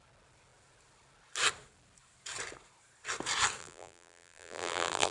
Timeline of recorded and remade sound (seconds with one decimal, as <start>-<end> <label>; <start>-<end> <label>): 0.0-3.6 recorded; 3.6-5.1 remade